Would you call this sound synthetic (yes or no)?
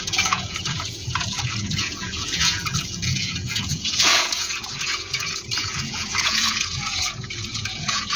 yes